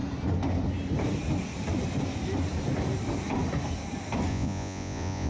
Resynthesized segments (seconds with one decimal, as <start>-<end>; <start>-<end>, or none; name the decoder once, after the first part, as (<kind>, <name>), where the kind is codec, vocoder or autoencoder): 4.3-5.3 (vocoder, Vocos)